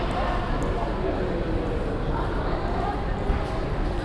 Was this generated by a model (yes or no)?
no